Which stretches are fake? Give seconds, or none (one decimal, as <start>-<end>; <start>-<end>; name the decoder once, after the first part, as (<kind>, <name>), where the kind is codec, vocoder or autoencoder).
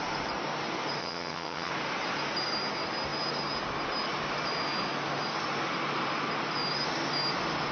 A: 1.0-1.7 (vocoder, HiFi-GAN)